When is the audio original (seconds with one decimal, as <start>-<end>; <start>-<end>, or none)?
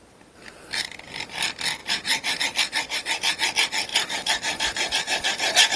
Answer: 1.2-1.8; 2.4-3.9